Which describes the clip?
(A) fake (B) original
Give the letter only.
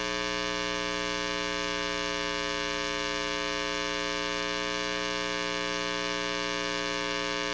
B